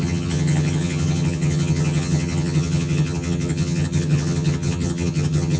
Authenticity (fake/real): fake